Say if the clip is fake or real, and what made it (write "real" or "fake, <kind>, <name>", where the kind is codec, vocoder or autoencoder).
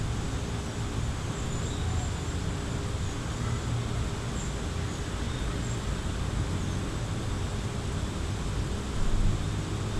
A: real